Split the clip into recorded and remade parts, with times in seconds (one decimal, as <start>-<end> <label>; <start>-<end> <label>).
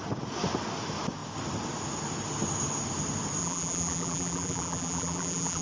0.0-3.4 recorded; 3.4-5.6 remade